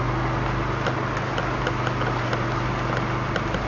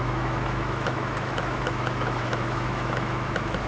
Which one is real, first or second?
first